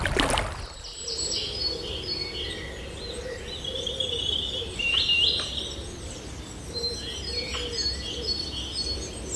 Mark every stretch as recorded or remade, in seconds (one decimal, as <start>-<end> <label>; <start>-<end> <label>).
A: 0.0-0.9 recorded; 0.9-1.7 remade; 1.7-9.4 recorded